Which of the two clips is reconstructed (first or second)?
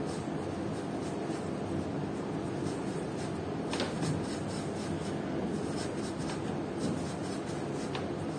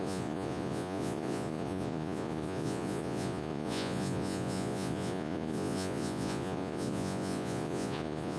second